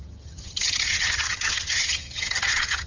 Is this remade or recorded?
remade